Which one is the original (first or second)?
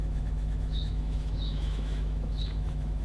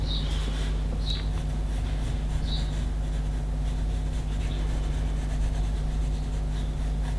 second